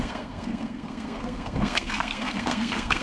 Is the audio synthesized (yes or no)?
yes